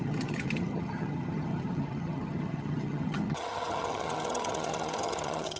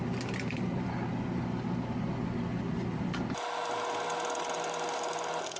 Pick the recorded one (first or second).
second